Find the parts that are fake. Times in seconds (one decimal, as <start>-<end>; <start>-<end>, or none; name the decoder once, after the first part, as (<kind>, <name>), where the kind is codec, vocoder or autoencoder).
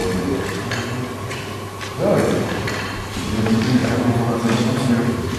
none